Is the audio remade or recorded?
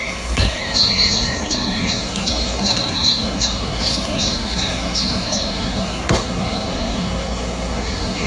remade